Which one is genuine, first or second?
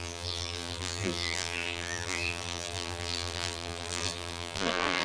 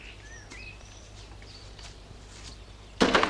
second